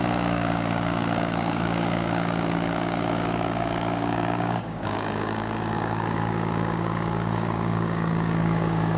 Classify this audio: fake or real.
fake